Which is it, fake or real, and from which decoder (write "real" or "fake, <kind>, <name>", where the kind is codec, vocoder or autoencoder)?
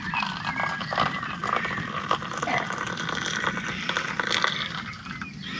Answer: real